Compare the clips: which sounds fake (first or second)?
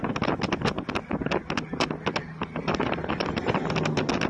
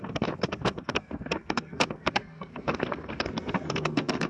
second